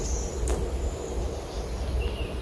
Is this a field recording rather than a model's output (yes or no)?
yes